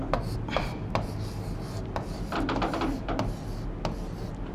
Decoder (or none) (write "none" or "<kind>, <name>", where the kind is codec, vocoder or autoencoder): none